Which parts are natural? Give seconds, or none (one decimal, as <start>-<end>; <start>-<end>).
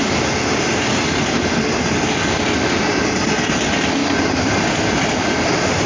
0.0-5.9